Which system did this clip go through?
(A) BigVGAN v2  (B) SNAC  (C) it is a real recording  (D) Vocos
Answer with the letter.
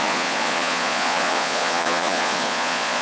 D